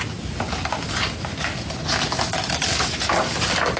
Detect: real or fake real